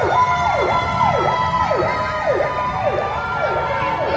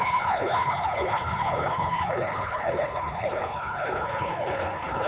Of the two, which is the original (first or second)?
first